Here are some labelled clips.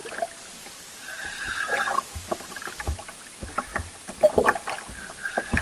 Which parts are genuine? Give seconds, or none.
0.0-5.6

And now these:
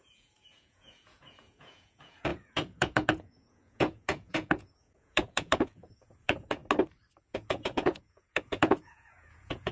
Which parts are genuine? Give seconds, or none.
6.6-7.2